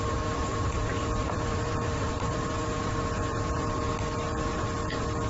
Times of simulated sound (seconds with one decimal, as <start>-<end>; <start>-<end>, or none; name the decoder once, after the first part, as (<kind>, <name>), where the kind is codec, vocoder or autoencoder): 0.5-3.7 (vocoder, BigVGAN v2)